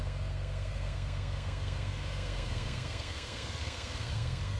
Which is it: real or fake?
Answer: fake